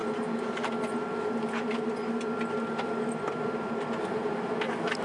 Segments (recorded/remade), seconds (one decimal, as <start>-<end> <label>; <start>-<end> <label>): 0.0-5.0 recorded